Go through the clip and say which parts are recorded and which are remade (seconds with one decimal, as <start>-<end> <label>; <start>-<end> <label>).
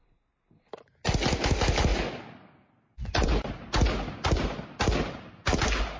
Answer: 0.0-6.0 recorded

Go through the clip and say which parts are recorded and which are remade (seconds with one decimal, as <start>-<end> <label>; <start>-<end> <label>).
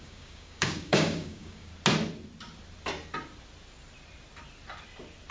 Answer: 0.0-1.7 remade; 1.7-5.3 recorded